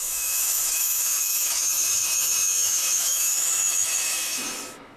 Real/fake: fake